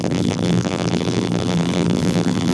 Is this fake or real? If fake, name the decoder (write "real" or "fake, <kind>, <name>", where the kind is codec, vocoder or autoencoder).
fake, vocoder, BigVGAN v2